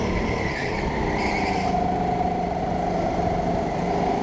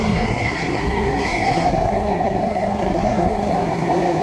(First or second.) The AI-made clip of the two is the second